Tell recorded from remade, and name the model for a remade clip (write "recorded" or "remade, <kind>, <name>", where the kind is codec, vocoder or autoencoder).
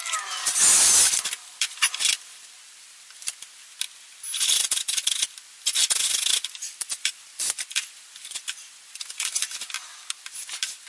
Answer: recorded